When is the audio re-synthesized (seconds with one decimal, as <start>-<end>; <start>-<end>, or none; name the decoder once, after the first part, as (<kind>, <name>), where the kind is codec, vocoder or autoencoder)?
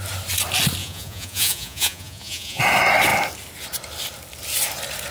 0.8-2.6 (vocoder, Vocos)